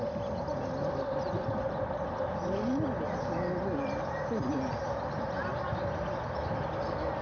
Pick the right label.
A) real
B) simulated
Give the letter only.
A